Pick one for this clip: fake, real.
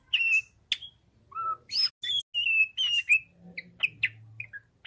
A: real